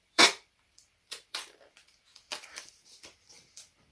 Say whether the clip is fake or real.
fake